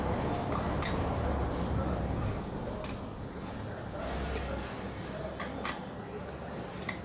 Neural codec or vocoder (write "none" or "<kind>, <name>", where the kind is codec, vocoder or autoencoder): none